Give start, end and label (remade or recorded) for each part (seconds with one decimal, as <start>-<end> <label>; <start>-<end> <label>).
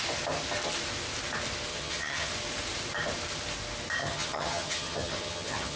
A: 0.0-1.7 recorded; 1.7-2.3 remade; 2.3-4.0 recorded; 4.0-5.8 remade